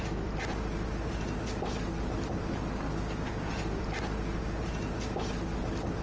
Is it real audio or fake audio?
real